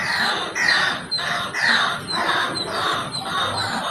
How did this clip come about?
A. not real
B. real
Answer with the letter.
B